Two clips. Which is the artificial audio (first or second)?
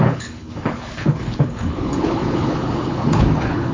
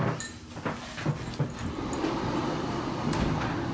first